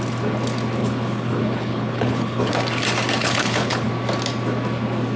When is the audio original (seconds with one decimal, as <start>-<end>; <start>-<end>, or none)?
0.0-0.8; 2.5-3.2; 3.9-5.2

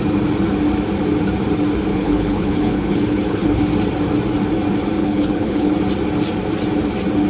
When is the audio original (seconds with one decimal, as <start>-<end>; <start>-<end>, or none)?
0.0-1.9; 3.6-5.0; 5.7-7.3

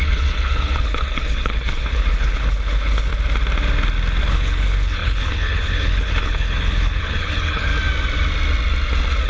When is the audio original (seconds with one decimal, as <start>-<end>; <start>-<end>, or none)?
3.1-4.2; 7.7-9.3